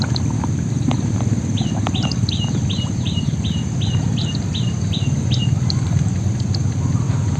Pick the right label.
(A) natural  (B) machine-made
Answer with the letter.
B